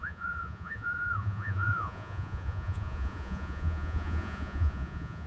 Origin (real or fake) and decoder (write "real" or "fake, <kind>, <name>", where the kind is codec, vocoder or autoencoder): fake, vocoder, Vocos